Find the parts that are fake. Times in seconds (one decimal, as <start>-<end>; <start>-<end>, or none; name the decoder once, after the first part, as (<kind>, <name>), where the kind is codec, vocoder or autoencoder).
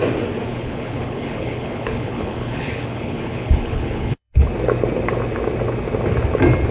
0.5-4.5 (codec, HILCodec)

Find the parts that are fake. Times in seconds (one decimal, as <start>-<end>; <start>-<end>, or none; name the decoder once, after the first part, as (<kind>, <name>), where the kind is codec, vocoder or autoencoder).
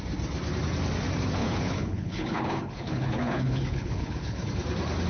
1.4-4.5 (codec, HILCodec)